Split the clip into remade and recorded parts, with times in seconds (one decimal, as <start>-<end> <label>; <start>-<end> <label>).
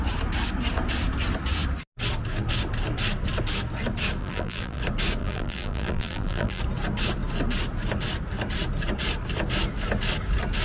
0.0-4.2 recorded; 4.2-4.8 remade; 4.8-5.2 recorded; 5.2-6.6 remade; 6.6-10.6 recorded